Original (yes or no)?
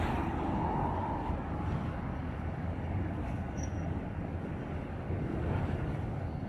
no